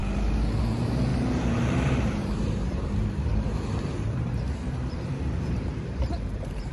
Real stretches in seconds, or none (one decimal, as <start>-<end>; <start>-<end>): 0.0-0.6